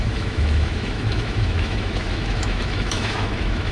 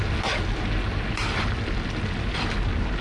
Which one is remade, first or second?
first